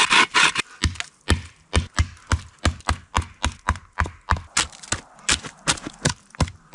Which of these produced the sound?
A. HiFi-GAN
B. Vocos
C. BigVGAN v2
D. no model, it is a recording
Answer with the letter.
D